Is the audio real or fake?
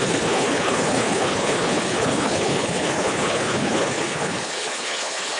fake